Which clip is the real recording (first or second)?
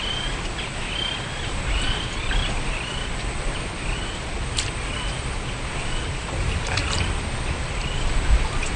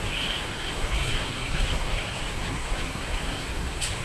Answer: first